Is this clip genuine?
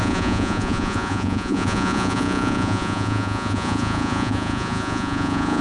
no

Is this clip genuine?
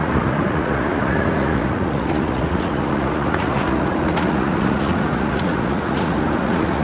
no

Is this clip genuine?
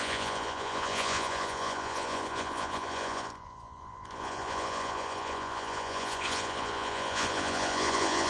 no